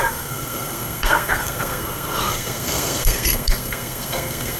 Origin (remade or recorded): remade